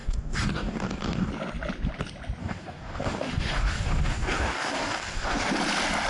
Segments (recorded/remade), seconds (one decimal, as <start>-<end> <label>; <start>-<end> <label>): 0.0-1.3 remade; 1.3-2.4 recorded; 2.4-5.5 remade; 5.5-6.1 recorded